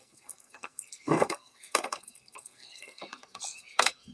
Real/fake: fake